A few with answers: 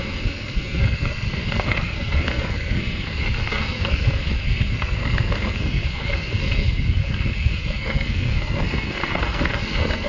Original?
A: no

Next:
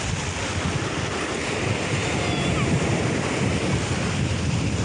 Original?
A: yes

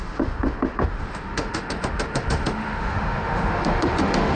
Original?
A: no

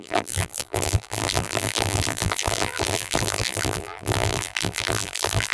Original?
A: no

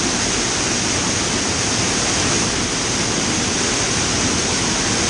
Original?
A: yes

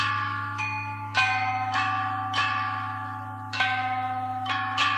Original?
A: no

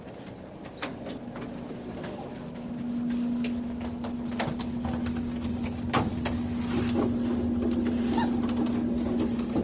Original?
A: yes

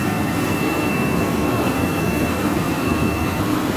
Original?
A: no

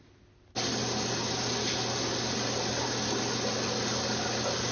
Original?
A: yes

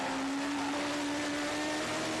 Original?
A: yes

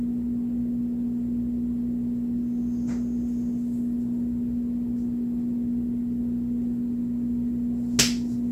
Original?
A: yes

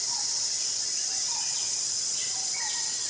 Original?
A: no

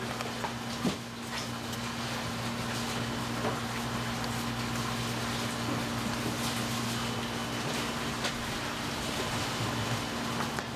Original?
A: yes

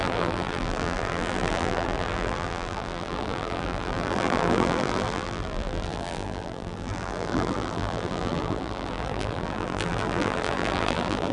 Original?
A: no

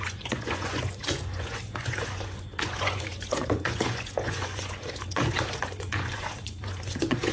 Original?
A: no